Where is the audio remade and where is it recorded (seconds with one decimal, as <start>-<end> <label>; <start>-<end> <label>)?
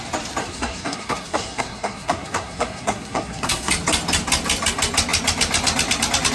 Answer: 0.0-0.4 recorded; 0.4-3.7 remade; 3.7-6.3 recorded